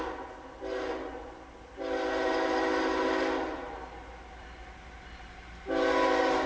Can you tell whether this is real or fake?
real